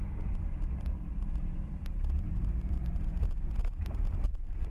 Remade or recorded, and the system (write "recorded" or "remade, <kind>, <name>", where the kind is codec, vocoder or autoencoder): remade, vocoder, BigVGAN v2